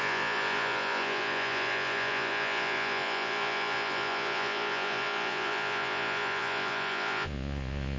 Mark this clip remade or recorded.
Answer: remade